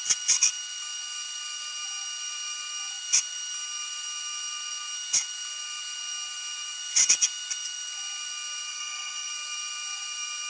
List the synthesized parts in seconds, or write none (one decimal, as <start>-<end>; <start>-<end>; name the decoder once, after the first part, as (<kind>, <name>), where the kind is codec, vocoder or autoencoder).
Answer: 8.7-9.3 (codec, SNAC)

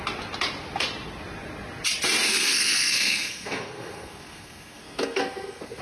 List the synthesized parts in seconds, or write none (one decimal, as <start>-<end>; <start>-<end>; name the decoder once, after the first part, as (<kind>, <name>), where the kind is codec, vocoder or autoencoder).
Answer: 2.3-5.8 (codec, SNAC)

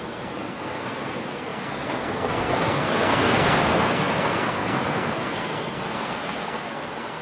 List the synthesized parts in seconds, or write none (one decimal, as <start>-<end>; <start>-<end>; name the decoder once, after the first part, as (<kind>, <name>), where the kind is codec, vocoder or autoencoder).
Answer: 0.0-7.2 (codec, SNAC)

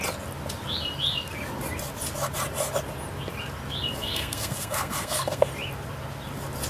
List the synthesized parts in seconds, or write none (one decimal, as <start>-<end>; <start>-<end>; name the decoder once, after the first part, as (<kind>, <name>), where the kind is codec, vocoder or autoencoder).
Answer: 4.0-5.5 (codec, SNAC)

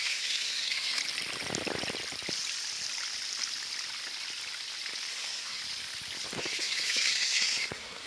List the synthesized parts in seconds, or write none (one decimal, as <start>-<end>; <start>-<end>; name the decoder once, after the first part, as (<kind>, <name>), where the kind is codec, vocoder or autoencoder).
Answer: 0.0-1.0 (codec, SNAC); 5.1-5.6; 6.4-8.1